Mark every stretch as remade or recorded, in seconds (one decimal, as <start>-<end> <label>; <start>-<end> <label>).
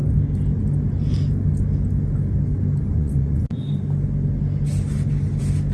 0.0-2.9 recorded; 2.9-3.6 remade; 3.6-5.7 recorded